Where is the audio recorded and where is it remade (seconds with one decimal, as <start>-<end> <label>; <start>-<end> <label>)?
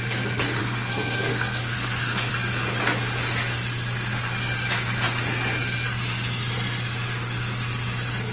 0.0-0.6 recorded; 0.6-2.3 remade; 2.3-8.3 recorded